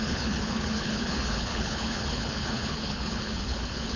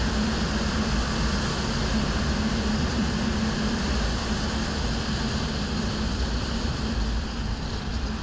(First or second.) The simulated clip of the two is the first